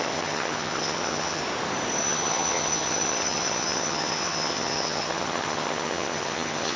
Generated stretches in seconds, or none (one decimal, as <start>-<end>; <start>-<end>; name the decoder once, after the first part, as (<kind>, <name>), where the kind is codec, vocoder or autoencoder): 0.0-1.4 (vocoder, HiFi-GAN); 2.0-6.8

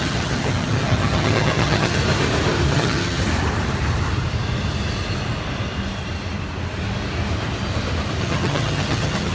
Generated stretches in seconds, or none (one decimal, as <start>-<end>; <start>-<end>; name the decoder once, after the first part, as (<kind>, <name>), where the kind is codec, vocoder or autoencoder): 0.0-2.0 (vocoder, HiFi-GAN); 2.7-3.2; 8.2-9.3

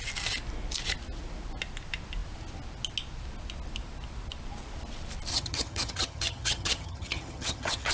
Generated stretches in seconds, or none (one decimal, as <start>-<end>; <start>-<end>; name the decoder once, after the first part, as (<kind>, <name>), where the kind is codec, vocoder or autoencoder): 5.3-7.9 (vocoder, HiFi-GAN)